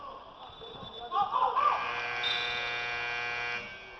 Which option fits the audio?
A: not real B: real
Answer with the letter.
B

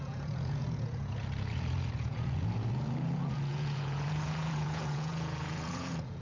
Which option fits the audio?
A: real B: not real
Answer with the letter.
B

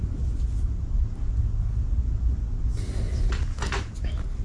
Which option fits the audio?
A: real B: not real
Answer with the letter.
A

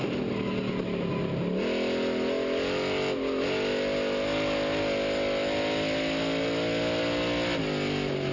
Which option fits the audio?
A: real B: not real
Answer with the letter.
A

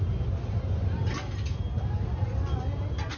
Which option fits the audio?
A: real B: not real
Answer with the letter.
A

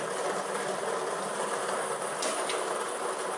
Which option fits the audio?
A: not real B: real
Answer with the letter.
B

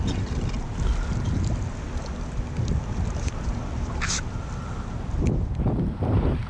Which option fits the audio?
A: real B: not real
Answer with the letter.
A